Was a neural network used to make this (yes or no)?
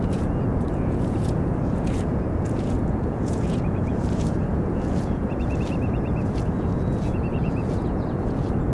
yes